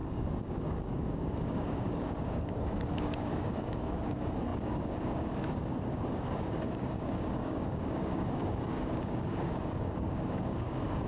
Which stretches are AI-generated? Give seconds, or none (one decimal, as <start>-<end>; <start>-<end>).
0.0-11.1